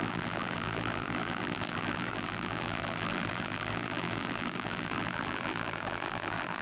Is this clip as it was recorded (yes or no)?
no